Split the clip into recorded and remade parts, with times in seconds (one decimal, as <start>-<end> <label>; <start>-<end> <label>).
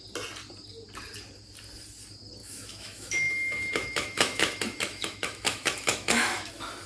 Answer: 0.0-2.4 recorded; 2.4-6.5 remade; 6.5-6.9 recorded